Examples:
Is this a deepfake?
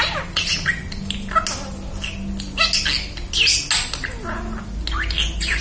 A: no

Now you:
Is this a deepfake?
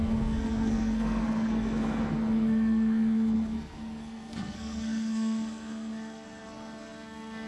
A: yes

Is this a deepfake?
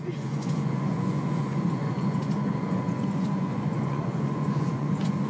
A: yes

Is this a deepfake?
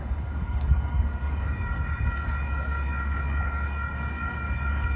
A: yes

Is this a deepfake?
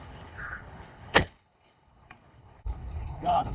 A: yes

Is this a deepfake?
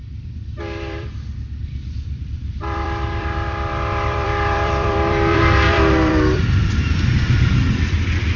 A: yes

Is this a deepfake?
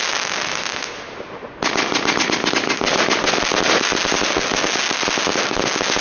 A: no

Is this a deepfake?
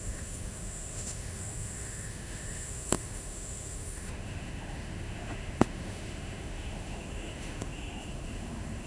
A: yes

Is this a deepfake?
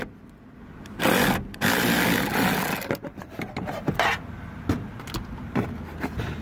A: no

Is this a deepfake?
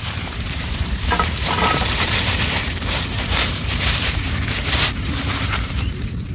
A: yes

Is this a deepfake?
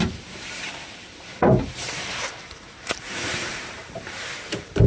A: yes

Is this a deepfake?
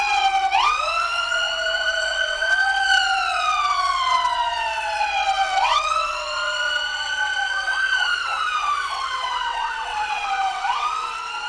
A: yes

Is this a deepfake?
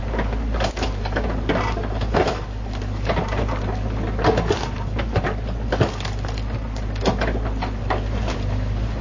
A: no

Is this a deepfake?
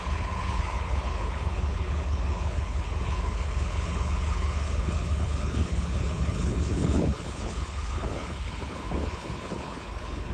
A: yes